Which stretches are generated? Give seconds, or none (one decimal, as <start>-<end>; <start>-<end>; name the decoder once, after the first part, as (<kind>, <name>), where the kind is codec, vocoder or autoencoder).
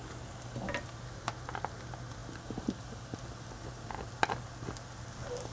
none